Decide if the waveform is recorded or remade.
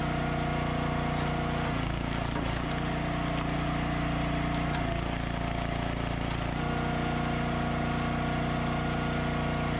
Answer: recorded